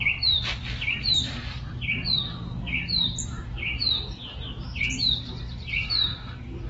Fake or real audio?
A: real